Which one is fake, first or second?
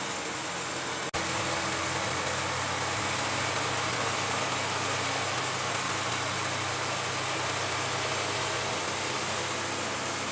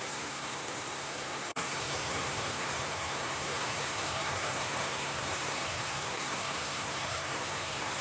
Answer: second